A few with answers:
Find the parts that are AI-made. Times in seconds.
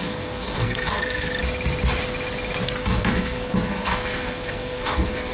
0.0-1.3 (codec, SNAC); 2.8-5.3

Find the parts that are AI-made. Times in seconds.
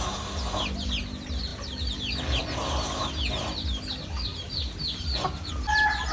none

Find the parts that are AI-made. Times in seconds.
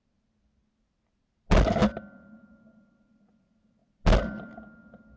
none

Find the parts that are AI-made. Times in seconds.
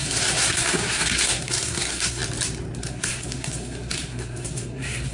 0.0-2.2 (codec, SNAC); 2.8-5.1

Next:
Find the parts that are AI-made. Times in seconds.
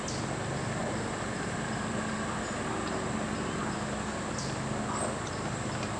none